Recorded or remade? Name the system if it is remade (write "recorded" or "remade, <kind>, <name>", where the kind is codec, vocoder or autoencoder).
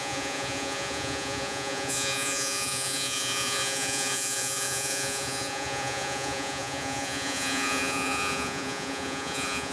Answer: remade, vocoder, Vocos